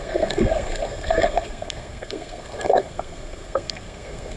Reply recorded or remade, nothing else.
remade